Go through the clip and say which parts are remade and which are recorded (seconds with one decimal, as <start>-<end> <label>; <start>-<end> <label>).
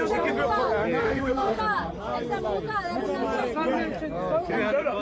0.0-1.0 recorded; 1.0-1.6 remade; 1.6-5.0 recorded